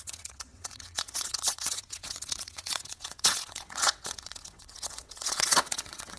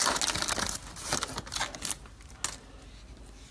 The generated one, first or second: first